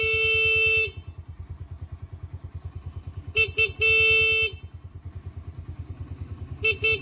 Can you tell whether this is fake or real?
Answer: real